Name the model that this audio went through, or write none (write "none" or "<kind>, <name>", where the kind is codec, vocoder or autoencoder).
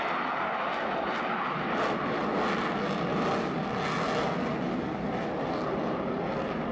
none